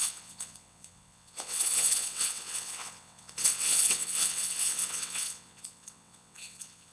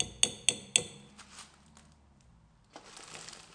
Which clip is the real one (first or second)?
second